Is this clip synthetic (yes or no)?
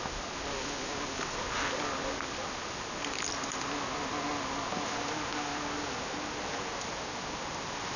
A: no